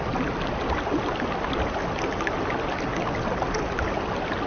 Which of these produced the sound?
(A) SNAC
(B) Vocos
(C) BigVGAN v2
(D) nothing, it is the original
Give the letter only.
D